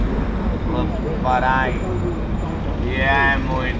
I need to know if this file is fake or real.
real